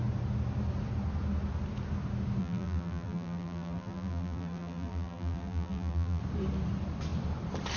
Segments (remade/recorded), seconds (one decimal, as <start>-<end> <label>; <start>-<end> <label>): 0.0-2.4 recorded; 2.4-6.2 remade; 6.2-7.8 recorded